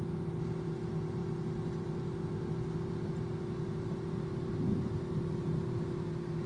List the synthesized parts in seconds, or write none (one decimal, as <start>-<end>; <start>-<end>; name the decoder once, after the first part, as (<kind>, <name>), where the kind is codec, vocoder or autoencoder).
none

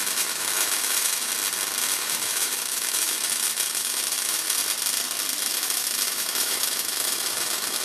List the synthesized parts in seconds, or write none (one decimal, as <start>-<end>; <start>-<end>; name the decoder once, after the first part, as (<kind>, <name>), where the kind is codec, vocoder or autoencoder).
0.0-1.3 (autoencoder, DAC-VAE); 1.8-4.6; 5.4-7.8

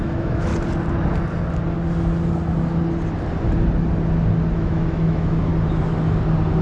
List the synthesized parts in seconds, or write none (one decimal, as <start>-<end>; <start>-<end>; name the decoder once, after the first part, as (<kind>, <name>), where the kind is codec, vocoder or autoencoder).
0.0-0.5 (autoencoder, DAC-VAE); 4.5-5.5

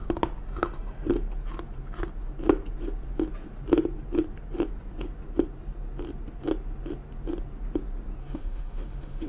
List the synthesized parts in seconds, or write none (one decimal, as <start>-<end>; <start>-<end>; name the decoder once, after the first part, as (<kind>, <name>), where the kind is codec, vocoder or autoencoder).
8.2-9.3 (autoencoder, DAC-VAE)

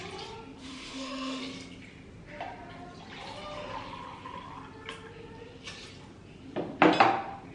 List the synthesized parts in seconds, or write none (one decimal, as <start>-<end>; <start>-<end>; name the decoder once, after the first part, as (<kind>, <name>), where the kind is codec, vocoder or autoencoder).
0.6-1.4 (autoencoder, DAC-VAE)